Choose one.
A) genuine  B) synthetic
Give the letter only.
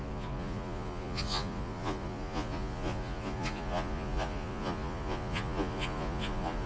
B